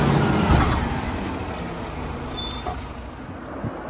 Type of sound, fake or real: real